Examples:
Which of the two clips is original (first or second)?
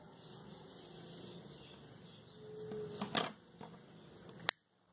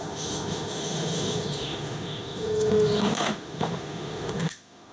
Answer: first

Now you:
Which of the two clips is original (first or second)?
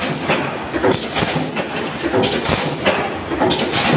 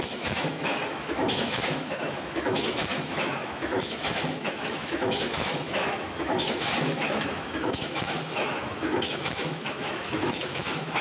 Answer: first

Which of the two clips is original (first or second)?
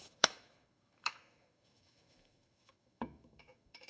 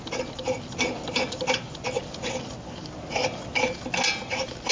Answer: second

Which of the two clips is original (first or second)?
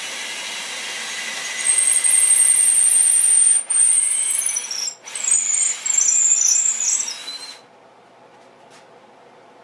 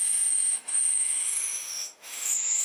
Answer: first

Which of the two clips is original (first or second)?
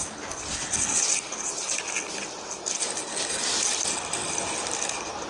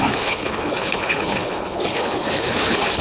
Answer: first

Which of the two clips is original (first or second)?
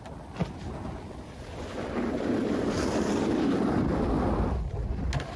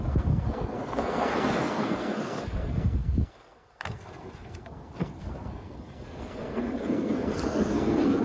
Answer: first